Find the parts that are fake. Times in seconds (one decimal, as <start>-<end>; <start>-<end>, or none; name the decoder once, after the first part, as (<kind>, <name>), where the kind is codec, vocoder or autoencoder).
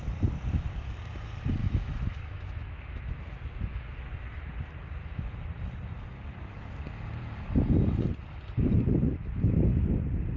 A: 1.6-3.2 (autoencoder, DAC-VAE)